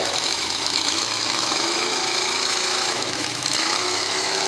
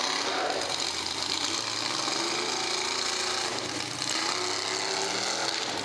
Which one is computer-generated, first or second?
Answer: first